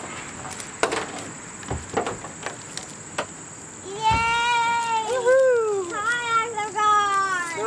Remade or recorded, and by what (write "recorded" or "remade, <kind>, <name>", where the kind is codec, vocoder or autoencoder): recorded